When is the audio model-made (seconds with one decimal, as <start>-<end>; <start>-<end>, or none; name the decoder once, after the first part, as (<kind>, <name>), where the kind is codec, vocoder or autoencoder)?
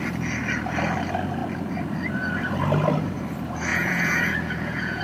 3.7-5.0 (vocoder, Vocos)